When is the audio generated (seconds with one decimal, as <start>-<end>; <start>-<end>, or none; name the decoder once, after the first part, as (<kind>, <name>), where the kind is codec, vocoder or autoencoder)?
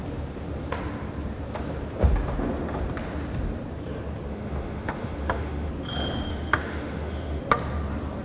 4.3-5.7 (autoencoder, DAC-VAE); 6.3-7.4